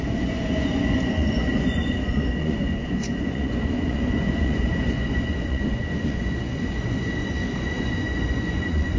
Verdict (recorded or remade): remade